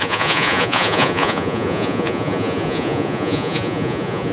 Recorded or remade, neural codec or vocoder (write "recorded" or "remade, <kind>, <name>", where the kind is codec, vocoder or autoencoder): remade, vocoder, Vocos